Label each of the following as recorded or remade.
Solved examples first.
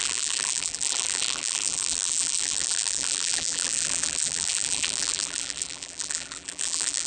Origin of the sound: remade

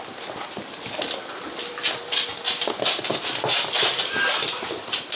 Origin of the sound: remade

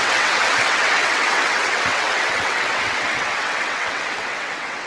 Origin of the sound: remade